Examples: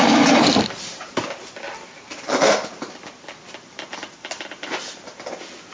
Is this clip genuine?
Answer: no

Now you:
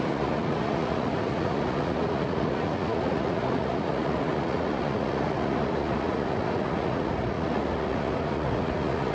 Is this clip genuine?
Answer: no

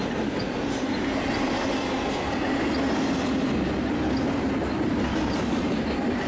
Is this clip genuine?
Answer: yes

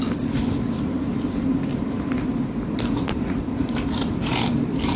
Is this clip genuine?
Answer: yes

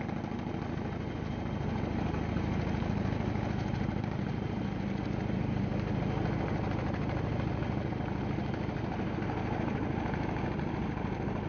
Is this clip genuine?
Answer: yes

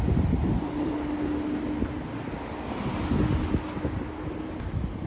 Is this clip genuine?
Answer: yes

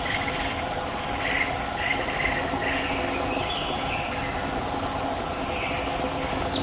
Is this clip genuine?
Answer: yes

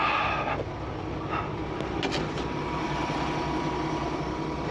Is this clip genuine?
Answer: yes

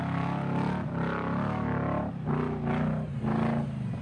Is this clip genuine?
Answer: yes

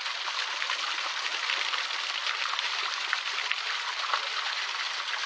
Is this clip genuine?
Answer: yes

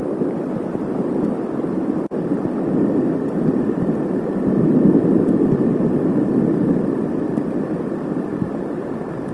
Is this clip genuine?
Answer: yes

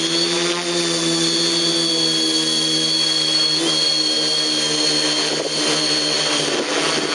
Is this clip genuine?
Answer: yes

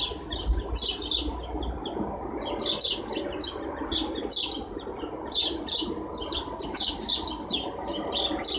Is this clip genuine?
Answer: yes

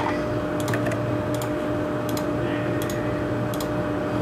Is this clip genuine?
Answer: yes